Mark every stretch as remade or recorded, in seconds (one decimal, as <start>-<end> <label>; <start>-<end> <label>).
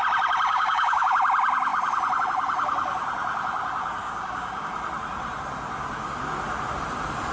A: 0.0-0.5 recorded; 0.5-1.1 remade; 1.1-4.0 recorded; 4.0-4.7 remade; 4.7-7.3 recorded